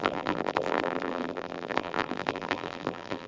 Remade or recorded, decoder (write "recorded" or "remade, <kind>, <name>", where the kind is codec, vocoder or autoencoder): remade, vocoder, BigVGAN v2